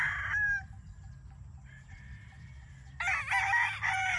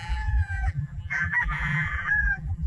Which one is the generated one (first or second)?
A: second